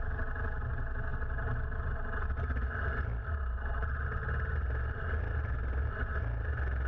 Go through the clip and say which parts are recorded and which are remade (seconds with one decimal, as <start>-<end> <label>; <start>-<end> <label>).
0.0-6.9 recorded